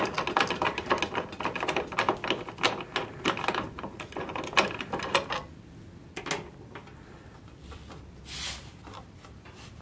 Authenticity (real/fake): real